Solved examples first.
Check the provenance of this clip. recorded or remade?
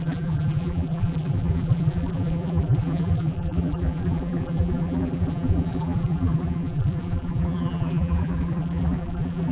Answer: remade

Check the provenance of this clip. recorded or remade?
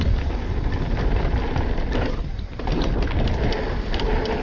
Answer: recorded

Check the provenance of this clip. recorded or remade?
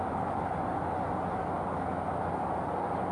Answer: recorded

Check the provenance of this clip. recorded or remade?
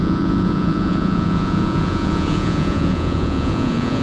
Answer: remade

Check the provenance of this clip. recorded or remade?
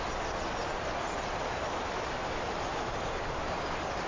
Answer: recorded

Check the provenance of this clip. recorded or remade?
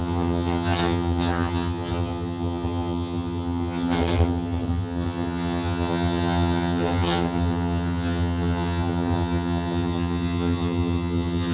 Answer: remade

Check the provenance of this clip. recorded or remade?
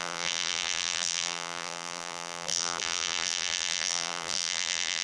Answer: remade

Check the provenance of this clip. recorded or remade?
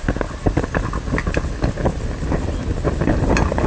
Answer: recorded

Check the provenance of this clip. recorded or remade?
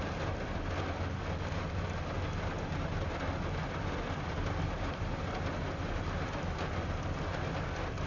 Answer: recorded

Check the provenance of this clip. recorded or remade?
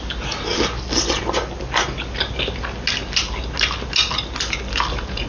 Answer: recorded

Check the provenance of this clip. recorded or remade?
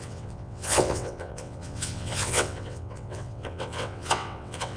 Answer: remade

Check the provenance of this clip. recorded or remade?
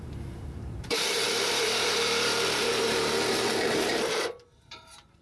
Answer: remade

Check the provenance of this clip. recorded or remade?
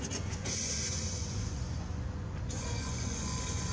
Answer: remade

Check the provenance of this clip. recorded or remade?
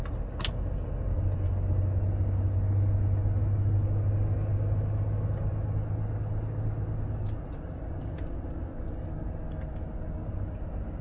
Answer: recorded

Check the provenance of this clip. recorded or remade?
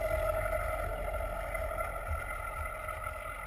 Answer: recorded